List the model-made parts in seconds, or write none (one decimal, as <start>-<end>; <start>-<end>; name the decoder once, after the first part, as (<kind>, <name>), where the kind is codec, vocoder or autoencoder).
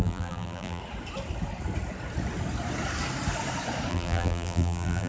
0.0-0.8 (vocoder, BigVGAN v2); 3.9-5.1